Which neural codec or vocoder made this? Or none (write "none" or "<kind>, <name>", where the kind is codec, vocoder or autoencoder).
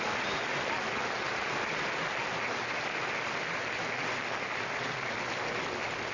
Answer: none